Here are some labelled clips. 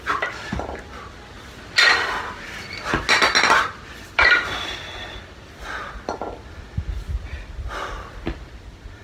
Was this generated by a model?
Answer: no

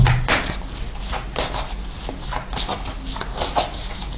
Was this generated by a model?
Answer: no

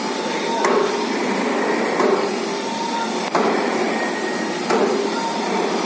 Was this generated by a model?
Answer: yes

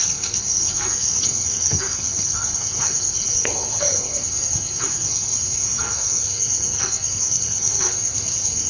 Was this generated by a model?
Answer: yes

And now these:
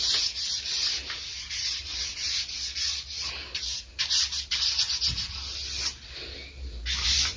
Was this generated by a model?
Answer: no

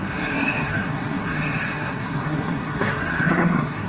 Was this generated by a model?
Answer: yes